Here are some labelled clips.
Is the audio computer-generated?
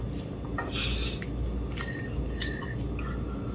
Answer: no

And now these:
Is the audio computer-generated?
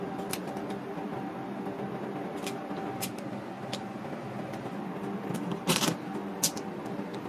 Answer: no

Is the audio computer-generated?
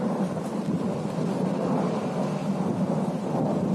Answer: no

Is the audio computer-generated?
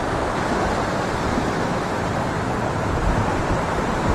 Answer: no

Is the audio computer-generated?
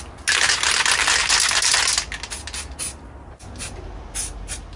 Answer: no